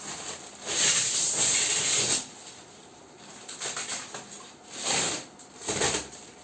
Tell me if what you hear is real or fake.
real